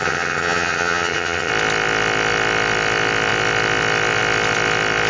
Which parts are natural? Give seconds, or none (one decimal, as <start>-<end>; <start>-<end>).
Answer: 1.5-5.1